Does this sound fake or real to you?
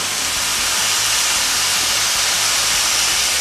real